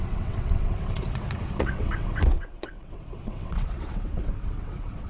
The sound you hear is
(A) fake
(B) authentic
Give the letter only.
A